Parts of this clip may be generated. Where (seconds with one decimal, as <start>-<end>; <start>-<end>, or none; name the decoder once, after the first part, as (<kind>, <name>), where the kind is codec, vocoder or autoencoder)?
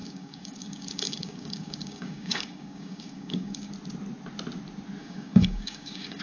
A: 0.0-3.7 (codec, DAC); 5.0-6.2